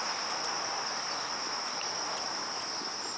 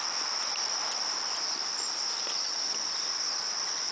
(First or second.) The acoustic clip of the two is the second